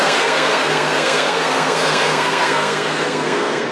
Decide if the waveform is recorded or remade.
remade